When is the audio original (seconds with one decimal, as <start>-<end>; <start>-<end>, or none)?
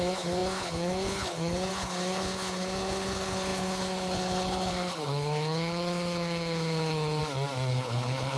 7.2-7.7